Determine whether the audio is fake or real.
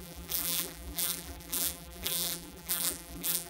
fake